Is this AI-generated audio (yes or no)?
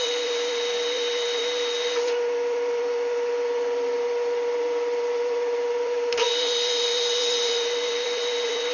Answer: yes